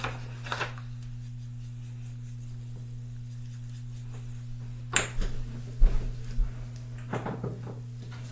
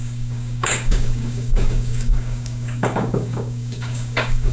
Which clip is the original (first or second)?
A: first